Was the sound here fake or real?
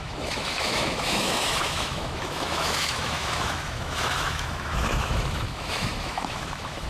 fake